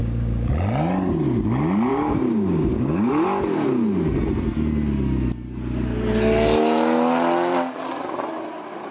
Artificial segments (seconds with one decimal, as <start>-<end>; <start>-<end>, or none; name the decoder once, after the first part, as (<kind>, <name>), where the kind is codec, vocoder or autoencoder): 0.0-0.5 (codec, DAC); 1.9-3.1